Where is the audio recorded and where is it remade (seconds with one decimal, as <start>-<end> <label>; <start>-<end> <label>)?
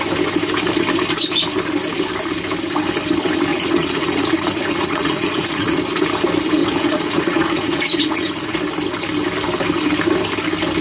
0.0-3.5 recorded; 3.5-5.8 remade; 5.8-6.6 recorded; 6.6-8.6 remade; 8.6-10.8 recorded